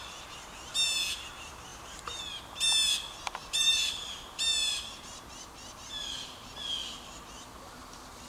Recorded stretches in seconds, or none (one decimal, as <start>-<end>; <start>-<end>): 0.0-3.4; 4.1-4.6; 5.9-8.3